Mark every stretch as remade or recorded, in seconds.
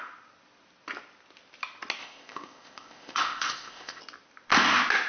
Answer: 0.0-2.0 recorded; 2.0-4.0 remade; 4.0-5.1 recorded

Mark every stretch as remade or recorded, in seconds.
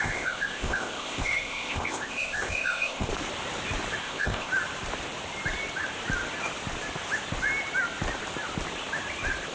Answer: 0.0-3.1 remade; 3.1-4.0 recorded; 4.0-4.5 remade; 4.5-9.5 recorded